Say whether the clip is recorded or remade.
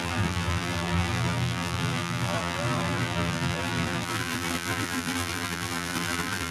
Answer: remade